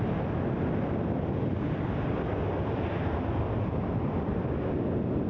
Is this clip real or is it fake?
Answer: real